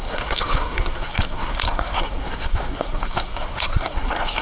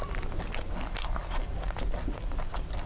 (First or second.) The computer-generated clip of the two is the first